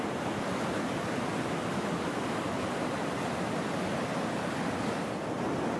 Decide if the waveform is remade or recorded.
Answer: recorded